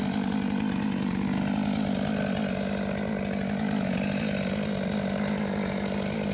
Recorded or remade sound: recorded